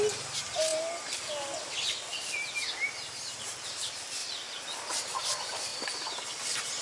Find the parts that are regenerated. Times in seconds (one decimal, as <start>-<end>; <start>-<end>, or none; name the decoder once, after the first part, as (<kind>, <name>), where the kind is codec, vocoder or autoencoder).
none